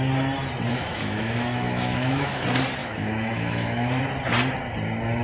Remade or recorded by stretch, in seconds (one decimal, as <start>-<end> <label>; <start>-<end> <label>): 0.0-0.7 recorded; 0.7-2.4 remade; 2.4-2.8 recorded; 2.8-4.0 remade; 4.0-5.2 recorded